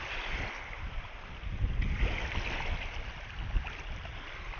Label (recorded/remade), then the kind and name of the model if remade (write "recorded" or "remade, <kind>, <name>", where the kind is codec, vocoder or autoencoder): recorded